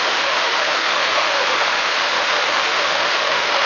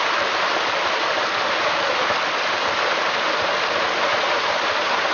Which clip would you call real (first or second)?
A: second